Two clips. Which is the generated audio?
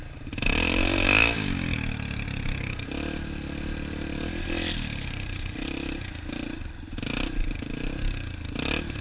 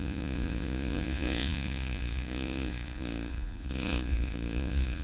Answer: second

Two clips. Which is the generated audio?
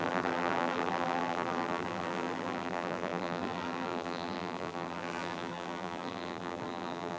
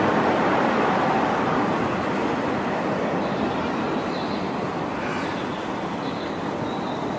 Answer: first